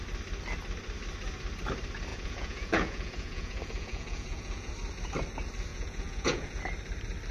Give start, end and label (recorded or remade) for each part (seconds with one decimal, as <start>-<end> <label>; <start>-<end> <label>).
0.0-2.1 recorded; 2.1-4.7 remade; 4.7-5.7 recorded; 5.7-6.6 remade; 6.6-7.3 recorded